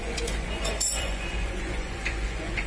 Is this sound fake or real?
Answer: fake